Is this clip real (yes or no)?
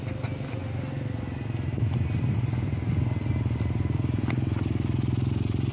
yes